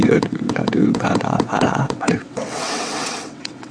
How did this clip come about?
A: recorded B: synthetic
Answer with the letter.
B